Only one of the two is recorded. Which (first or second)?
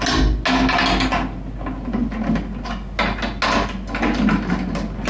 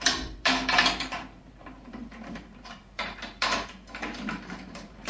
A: first